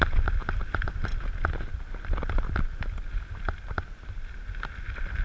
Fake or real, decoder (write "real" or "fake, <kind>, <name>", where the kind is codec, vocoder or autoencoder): real